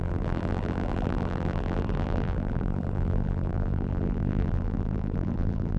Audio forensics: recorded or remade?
remade